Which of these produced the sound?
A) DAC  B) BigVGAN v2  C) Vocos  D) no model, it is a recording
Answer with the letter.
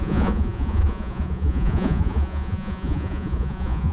C